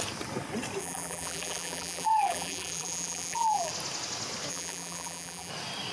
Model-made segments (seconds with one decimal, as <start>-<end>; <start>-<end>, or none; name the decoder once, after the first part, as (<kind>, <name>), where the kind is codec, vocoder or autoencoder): 0.8-3.7 (vocoder, BigVGAN v2); 4.5-5.5